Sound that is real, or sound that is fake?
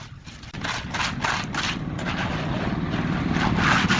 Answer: real